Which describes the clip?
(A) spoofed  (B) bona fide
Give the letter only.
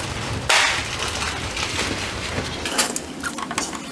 B